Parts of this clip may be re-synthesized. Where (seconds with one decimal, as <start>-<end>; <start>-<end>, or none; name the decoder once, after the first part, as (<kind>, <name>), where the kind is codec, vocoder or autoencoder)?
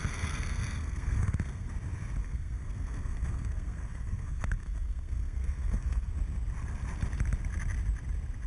0.0-1.7 (codec, SNAC); 2.2-6.1